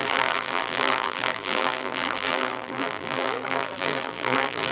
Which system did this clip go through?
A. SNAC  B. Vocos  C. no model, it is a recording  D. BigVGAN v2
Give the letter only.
D